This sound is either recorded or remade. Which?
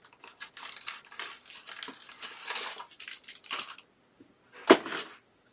recorded